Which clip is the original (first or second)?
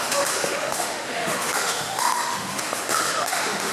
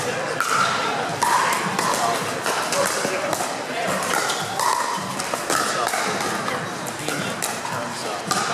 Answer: second